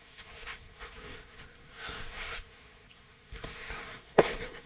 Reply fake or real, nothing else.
fake